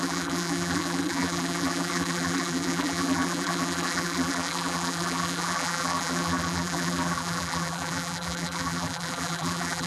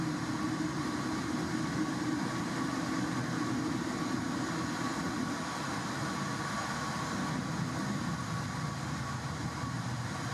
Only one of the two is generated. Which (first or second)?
first